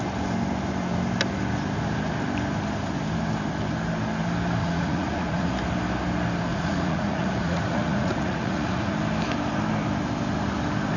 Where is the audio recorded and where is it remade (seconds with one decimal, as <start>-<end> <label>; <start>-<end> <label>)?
0.0-4.6 recorded; 4.6-5.5 remade; 5.5-6.5 recorded; 6.5-8.9 remade; 8.9-11.0 recorded